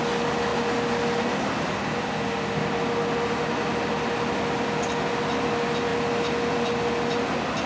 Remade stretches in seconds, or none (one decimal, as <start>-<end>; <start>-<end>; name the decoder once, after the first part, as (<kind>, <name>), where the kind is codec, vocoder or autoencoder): none